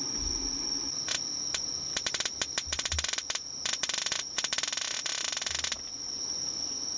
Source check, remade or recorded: recorded